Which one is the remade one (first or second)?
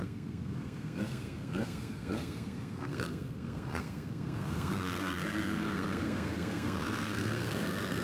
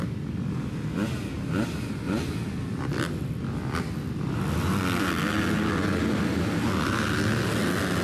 first